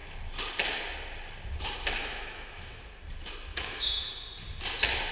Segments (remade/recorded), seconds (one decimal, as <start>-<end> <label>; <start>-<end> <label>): 0.0-2.0 recorded; 2.0-2.8 remade; 2.8-3.5 recorded; 3.5-4.1 remade; 4.1-5.1 recorded